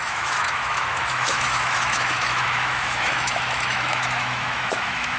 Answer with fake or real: fake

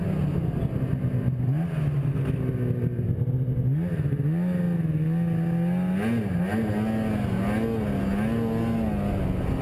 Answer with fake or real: real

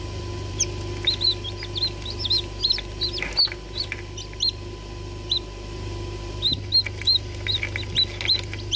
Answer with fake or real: real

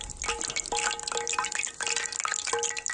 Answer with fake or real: real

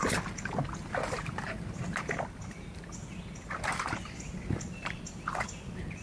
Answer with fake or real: real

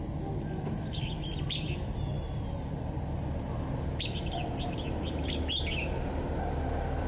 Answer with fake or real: real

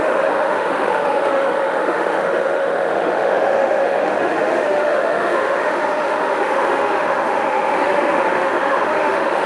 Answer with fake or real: fake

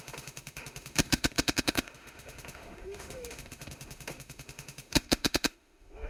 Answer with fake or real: fake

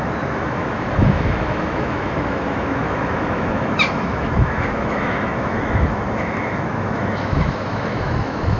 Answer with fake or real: fake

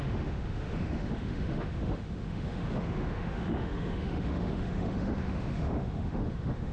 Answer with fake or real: fake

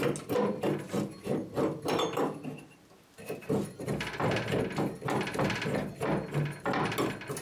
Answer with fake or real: real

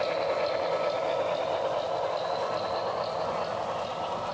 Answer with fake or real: real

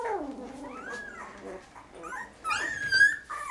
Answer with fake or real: real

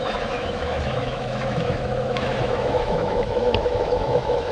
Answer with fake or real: fake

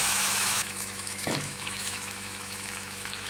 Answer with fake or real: fake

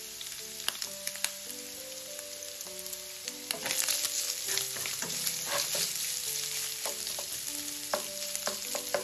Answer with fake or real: real